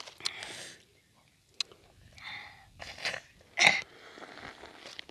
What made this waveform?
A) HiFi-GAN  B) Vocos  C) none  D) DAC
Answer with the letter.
C